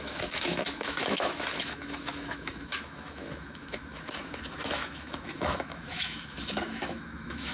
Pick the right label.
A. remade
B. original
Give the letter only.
A